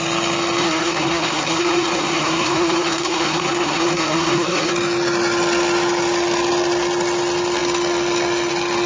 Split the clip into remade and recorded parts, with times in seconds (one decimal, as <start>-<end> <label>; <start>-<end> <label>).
0.0-0.6 recorded; 0.6-4.7 remade; 4.7-8.9 recorded